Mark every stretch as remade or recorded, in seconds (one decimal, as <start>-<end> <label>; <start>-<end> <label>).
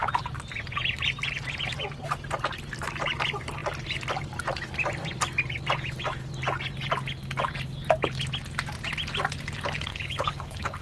0.0-9.9 recorded; 9.9-10.8 remade